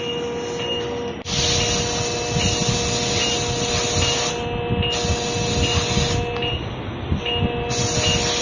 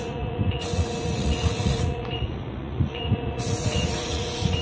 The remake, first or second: second